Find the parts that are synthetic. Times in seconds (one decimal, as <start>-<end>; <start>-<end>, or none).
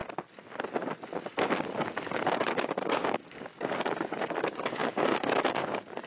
1.8-6.1